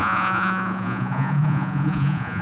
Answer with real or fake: fake